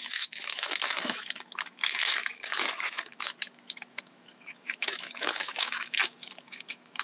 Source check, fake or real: fake